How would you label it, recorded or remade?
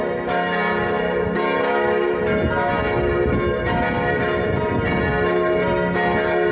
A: recorded